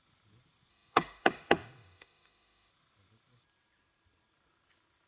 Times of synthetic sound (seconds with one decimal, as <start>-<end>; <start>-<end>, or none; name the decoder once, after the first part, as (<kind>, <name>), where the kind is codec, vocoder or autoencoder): 0.7-2.7 (autoencoder, DAC-VAE)